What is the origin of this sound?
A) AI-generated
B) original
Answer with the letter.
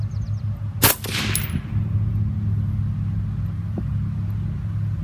B